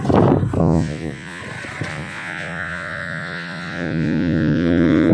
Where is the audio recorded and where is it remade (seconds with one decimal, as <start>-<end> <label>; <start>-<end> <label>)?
0.0-0.6 recorded; 0.6-1.4 remade; 1.4-1.9 recorded; 1.9-5.1 remade